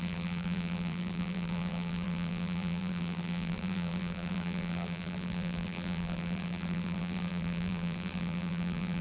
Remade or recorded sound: remade